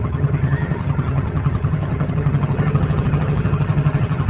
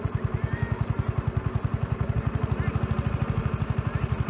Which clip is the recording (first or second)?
second